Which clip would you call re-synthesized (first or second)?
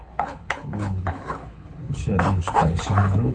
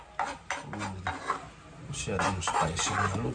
first